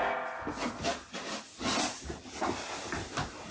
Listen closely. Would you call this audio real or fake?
real